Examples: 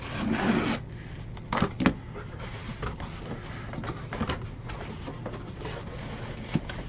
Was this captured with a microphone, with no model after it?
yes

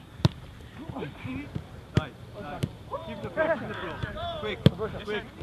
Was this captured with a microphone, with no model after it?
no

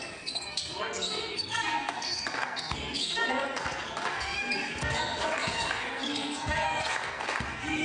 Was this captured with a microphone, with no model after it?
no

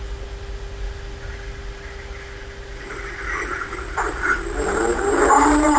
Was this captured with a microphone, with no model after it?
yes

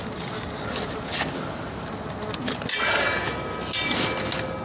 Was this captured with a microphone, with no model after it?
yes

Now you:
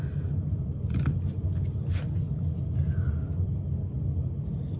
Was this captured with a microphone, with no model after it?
yes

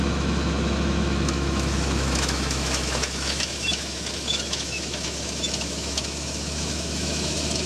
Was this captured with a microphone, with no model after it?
no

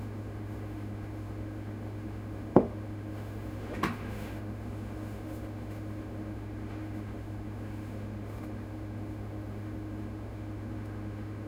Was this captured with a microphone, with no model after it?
no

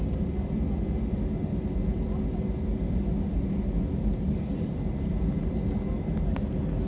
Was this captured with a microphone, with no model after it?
yes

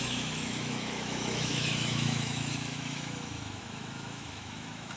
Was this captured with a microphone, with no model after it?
no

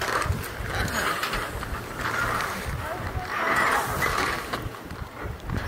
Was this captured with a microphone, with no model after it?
yes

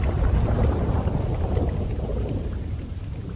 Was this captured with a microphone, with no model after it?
yes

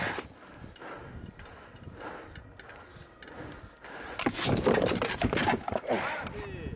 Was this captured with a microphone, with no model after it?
yes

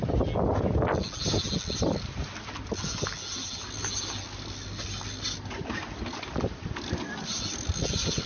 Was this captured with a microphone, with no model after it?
yes